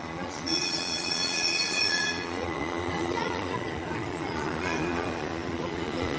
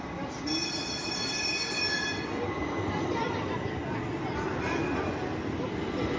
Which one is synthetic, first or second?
first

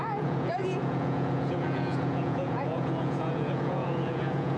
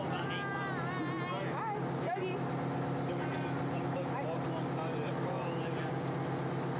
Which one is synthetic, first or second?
first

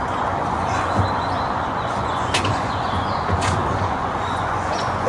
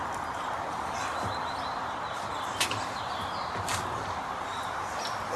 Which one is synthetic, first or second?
first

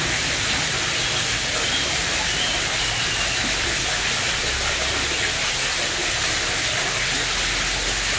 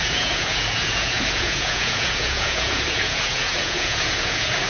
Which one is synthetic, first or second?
second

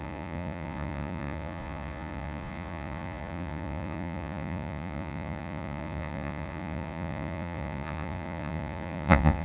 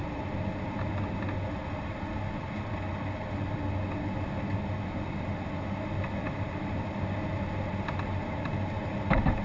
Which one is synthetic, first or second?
first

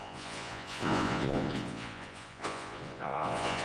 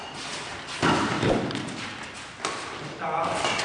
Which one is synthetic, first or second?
first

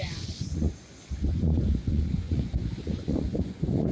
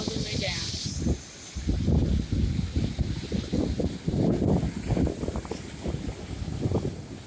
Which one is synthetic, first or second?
first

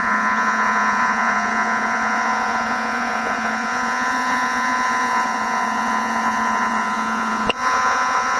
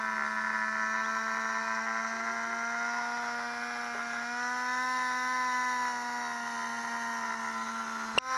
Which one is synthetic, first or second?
first